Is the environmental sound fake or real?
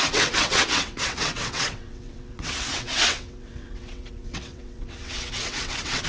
fake